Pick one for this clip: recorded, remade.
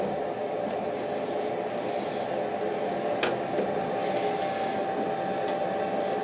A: recorded